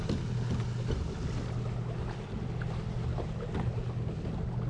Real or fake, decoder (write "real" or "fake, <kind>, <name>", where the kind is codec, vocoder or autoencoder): real